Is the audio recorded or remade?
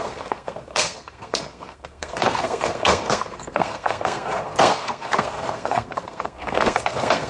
remade